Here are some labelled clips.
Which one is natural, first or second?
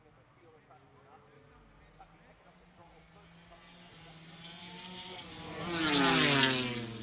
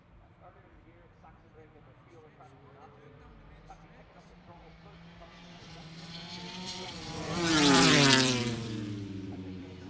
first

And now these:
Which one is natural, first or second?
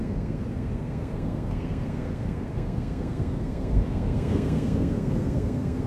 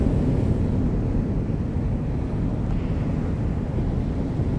second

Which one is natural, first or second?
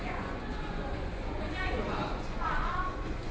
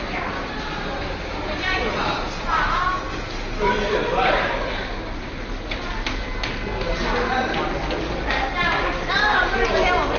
second